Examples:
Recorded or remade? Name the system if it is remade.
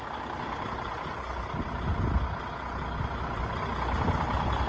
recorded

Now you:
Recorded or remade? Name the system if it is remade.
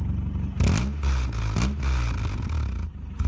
recorded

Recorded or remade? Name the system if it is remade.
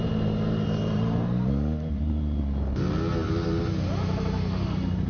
recorded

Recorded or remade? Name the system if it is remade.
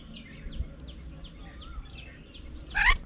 recorded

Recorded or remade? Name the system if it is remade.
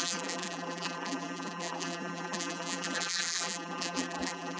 remade, vocoder, BigVGAN v2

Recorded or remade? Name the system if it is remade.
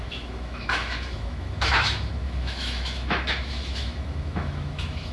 remade, autoencoder, DAC-VAE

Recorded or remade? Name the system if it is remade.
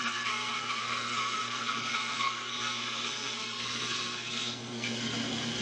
remade, codec, SNAC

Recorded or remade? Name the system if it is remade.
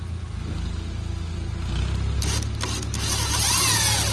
recorded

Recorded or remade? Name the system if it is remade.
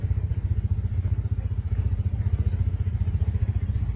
recorded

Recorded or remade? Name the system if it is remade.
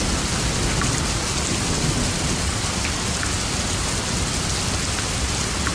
recorded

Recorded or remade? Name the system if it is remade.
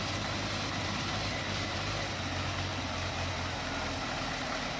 recorded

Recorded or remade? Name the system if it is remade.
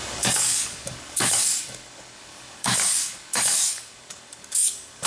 remade, codec, DAC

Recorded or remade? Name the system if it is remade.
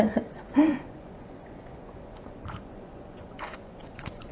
remade, vocoder, Vocos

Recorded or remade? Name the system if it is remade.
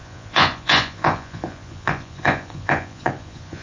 remade, vocoder, Vocos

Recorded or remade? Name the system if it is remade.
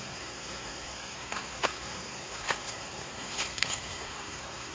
remade, codec, SNAC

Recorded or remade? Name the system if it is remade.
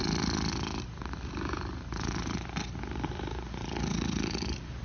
remade, vocoder, BigVGAN v2